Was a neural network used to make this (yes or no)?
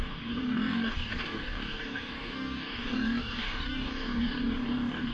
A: yes